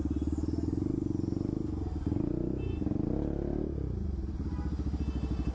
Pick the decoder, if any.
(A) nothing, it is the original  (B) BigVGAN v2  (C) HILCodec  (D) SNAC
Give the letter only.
A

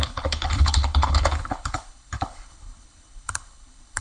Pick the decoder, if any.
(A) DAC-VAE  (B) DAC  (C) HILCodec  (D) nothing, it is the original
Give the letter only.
C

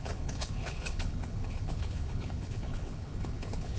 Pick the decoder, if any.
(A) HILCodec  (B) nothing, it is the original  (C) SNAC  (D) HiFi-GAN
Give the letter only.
A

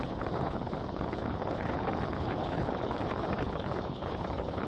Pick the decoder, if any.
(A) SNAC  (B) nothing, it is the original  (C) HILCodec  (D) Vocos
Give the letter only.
C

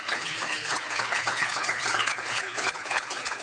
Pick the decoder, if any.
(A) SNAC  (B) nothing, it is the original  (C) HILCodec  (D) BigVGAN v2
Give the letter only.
C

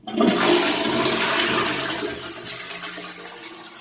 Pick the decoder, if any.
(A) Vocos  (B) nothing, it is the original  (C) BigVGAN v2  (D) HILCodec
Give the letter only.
B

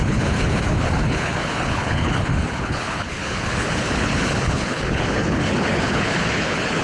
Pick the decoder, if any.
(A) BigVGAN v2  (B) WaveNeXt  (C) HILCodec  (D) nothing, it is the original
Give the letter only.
C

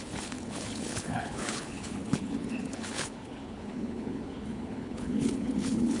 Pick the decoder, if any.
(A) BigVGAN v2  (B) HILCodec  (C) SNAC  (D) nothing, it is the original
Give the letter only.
B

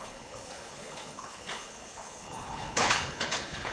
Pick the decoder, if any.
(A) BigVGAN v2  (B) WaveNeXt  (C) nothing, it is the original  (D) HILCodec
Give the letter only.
D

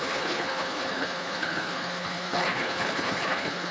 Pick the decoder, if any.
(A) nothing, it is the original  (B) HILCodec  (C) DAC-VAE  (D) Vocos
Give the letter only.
B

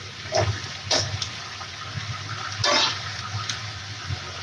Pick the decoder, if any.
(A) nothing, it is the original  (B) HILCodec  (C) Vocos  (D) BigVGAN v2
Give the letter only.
A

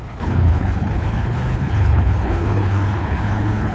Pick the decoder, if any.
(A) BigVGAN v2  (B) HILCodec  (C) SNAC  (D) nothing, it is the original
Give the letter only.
B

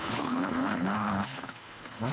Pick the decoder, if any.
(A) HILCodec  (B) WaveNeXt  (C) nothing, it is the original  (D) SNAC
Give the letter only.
A